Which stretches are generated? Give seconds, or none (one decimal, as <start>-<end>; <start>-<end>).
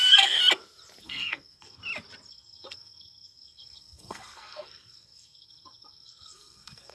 0.0-0.4; 1.0-1.8; 2.3-6.9